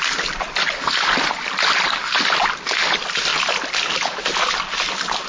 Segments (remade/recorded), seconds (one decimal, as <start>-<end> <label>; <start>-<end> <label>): 0.0-5.3 recorded